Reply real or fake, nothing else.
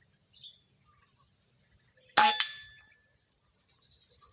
real